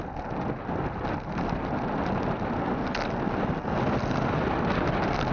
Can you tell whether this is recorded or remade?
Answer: recorded